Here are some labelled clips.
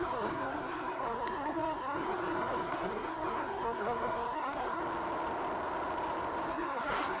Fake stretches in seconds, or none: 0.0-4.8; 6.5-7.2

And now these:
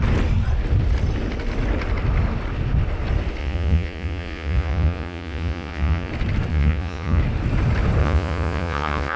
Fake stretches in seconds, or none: 3.4-6.1; 6.5-7.2; 8.0-9.2

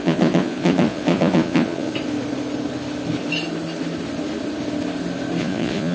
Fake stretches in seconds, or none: 0.0-1.9; 5.4-5.9